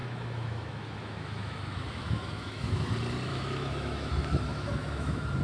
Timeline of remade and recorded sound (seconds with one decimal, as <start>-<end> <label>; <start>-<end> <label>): 0.0-2.9 remade; 2.9-3.3 recorded; 3.3-4.1 remade; 4.1-4.5 recorded; 4.5-5.4 remade